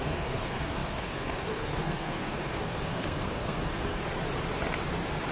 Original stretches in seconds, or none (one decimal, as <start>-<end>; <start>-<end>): 4.0-5.3